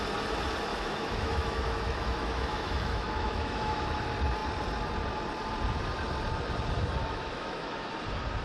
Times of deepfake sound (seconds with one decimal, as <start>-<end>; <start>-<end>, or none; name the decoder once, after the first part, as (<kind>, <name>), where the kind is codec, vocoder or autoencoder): 0.7-4.0 (autoencoder, DAC-VAE); 7.0-7.9